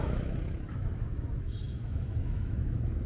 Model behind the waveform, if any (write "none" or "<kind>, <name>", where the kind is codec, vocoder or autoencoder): autoencoder, DAC-VAE